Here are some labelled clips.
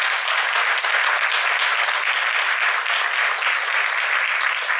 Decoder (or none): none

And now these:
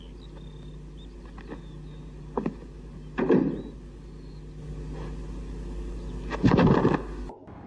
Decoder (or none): none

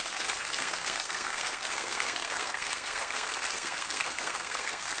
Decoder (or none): codec, SNAC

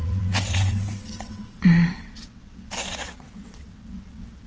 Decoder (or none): vocoder, WaveNeXt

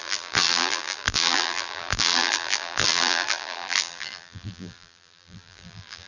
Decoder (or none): vocoder, BigVGAN v2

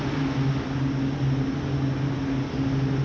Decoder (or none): none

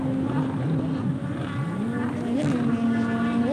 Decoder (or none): none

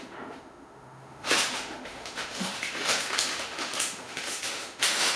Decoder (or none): autoencoder, DAC-VAE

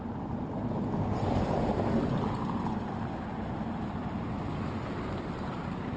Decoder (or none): none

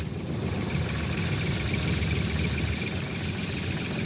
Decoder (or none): none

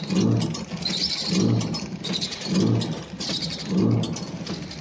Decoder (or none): none